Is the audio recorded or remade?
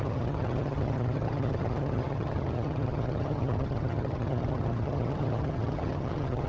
remade